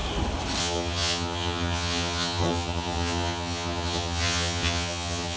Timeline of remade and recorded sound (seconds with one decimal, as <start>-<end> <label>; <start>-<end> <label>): 0.0-0.6 recorded; 0.6-5.4 remade